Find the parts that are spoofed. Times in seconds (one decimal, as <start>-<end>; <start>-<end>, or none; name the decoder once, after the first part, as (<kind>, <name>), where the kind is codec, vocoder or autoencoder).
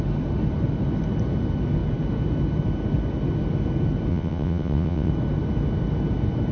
4.1-5.1 (vocoder, WaveNeXt)